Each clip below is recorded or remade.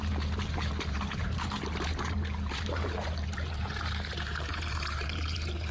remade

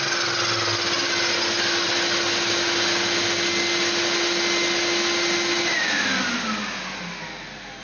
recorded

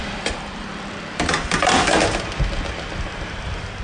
remade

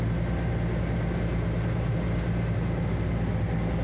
recorded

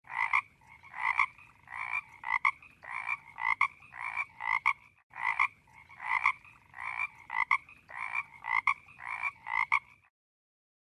remade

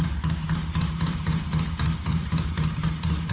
remade